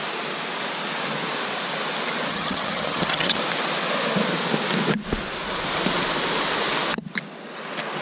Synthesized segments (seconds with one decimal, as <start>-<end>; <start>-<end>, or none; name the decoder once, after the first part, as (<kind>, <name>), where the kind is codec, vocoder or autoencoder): 2.3-3.4 (vocoder, HiFi-GAN)